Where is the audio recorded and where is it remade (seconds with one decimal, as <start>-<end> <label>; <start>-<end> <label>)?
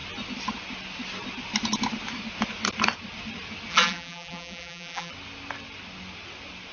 0.0-3.7 recorded; 3.7-5.1 remade; 5.1-6.7 recorded